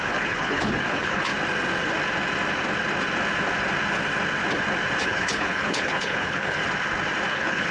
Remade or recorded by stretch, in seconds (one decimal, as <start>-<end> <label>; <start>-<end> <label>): 0.0-1.3 remade; 1.3-5.0 recorded; 5.0-6.6 remade; 6.6-7.3 recorded; 7.3-7.7 remade